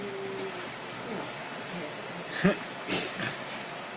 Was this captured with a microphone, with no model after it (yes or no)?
yes